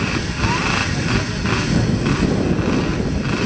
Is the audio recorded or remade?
recorded